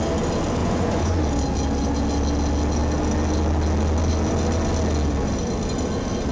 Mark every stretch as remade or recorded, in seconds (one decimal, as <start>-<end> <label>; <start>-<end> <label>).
0.0-0.6 recorded; 0.6-1.2 remade; 1.2-6.3 recorded